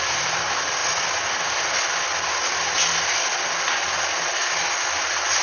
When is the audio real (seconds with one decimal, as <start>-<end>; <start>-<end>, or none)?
0.0-5.4